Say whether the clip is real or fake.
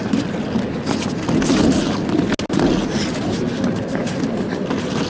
real